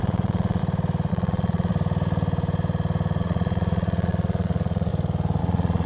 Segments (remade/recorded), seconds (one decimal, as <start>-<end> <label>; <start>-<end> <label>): 0.0-0.6 remade; 0.6-1.1 recorded; 1.1-1.7 remade; 1.7-3.2 recorded; 3.2-4.9 remade; 4.9-5.4 recorded; 5.4-5.9 remade